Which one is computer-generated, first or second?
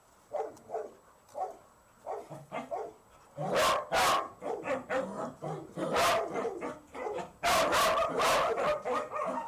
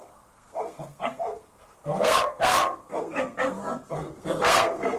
second